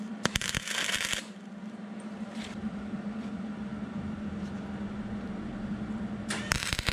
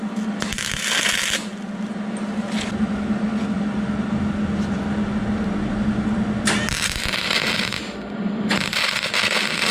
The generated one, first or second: first